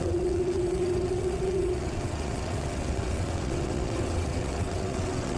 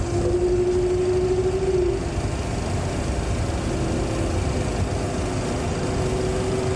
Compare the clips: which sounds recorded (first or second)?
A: second